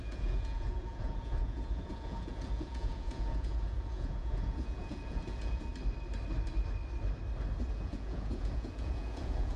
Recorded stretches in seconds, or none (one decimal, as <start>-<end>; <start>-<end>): 5.7-7.7